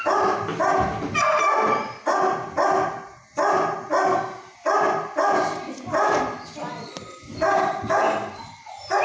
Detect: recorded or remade recorded